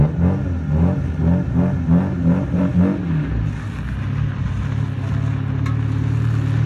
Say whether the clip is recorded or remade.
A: recorded